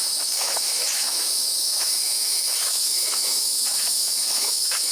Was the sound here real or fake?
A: fake